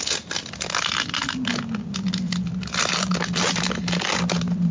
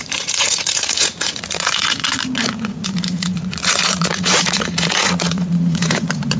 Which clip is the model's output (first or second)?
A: second